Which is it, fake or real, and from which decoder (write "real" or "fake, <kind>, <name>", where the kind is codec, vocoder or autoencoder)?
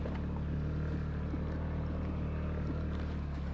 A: real